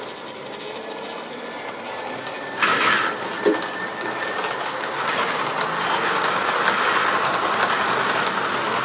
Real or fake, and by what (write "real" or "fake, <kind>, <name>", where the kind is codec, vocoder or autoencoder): real